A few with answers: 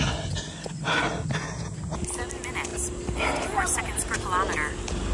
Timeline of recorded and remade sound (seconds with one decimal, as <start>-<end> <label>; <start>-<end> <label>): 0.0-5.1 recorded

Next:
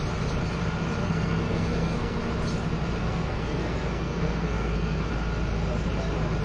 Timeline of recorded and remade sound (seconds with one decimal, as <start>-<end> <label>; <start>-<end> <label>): 0.0-1.0 recorded; 1.0-2.2 remade; 2.2-3.0 recorded; 3.0-5.1 remade; 5.1-6.4 recorded

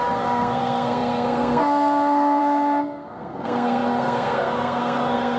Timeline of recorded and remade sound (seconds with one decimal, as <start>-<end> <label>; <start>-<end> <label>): 0.0-5.4 remade

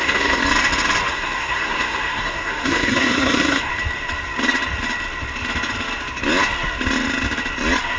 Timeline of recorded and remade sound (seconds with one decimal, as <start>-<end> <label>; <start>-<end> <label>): 0.0-0.4 remade; 0.4-1.1 recorded; 1.1-3.7 remade; 3.7-8.0 recorded

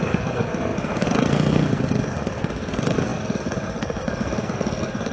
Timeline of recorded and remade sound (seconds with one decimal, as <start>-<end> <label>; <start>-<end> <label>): 0.0-5.1 remade